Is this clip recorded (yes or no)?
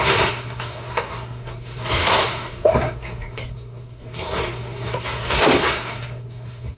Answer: no